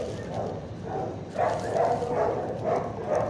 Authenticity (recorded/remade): recorded